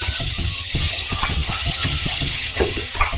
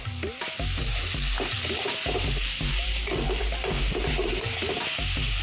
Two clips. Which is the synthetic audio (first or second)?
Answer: first